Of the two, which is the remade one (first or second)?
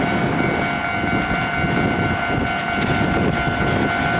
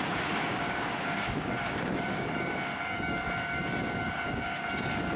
second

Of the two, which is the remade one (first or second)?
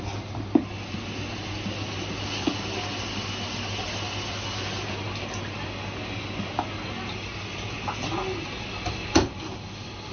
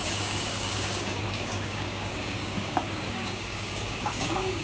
second